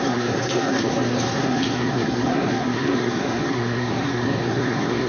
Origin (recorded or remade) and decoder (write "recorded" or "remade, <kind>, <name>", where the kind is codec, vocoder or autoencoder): remade, codec, SNAC